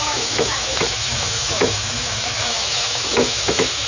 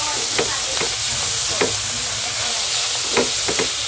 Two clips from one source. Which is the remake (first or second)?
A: first